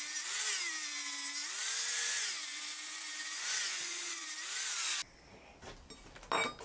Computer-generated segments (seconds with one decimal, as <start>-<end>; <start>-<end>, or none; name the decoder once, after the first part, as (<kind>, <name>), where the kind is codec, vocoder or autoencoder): 1.9-4.3 (vocoder, Vocos)